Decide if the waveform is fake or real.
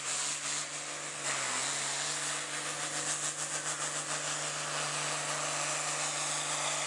real